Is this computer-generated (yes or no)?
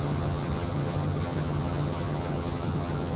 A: yes